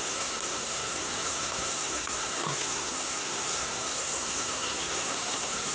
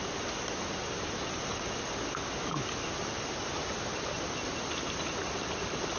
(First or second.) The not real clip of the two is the first